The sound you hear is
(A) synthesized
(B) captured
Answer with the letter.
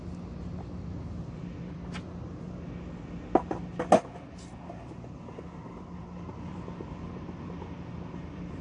B